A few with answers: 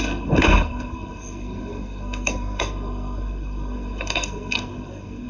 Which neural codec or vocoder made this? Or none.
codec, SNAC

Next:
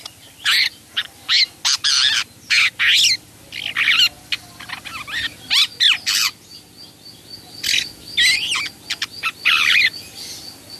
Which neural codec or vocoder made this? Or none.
none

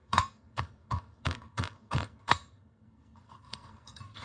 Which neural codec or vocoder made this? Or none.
codec, SNAC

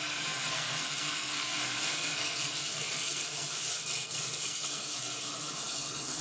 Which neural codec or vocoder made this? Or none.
codec, SNAC